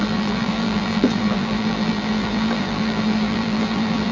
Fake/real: fake